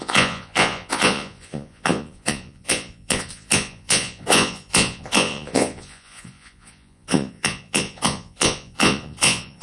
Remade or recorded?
remade